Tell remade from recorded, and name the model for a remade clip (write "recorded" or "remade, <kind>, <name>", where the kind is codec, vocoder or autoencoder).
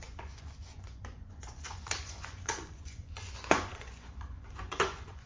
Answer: remade, vocoder, Vocos